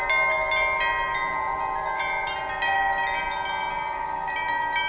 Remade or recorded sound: recorded